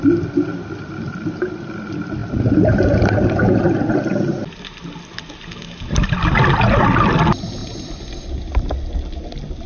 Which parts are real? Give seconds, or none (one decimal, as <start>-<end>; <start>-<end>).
0.0-9.7

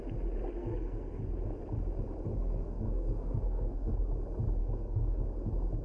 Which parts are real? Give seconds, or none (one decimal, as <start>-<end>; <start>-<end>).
0.0-0.6; 1.2-2.3; 3.9-4.6; 5.2-5.8

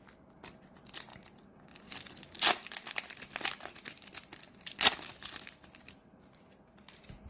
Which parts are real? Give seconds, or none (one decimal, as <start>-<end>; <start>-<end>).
0.0-7.3

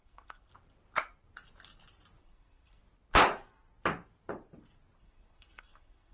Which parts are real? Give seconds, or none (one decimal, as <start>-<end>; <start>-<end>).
0.5-2.2; 2.8-5.0

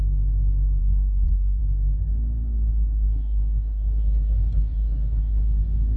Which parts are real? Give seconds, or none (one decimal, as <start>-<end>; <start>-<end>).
0.0-0.8; 1.6-2.7; 5.5-6.0

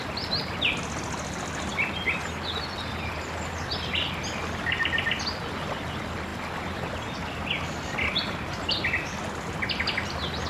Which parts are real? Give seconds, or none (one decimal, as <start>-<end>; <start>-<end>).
0.0-10.5

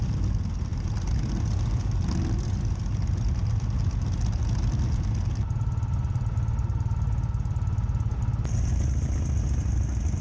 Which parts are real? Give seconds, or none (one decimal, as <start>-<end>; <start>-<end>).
0.0-10.2